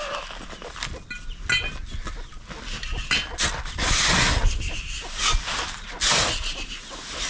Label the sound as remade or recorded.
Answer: recorded